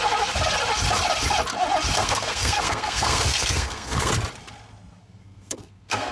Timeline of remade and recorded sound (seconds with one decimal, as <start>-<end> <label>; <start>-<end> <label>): 0.0-2.0 recorded; 2.0-4.1 remade; 4.1-5.0 recorded; 5.0-6.1 remade